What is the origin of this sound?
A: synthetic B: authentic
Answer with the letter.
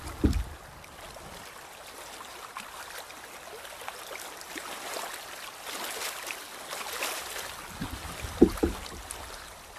B